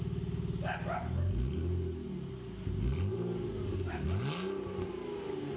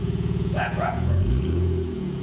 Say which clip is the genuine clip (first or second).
first